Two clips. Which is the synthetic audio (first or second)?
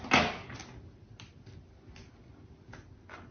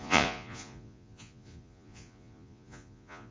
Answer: second